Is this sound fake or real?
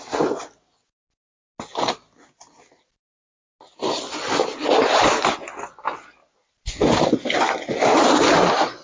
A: real